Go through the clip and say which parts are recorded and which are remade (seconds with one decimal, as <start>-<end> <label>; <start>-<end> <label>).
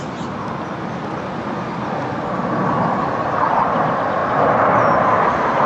0.0-5.7 recorded